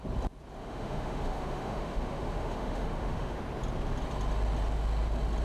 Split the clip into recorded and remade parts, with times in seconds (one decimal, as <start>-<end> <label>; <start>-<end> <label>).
0.0-0.6 recorded; 0.6-3.4 remade; 3.4-5.4 recorded